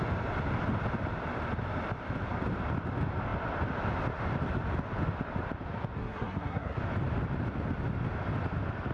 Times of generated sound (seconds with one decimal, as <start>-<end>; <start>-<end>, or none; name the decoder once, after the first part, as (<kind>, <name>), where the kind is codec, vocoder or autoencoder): 6.0-6.8 (codec, SNAC)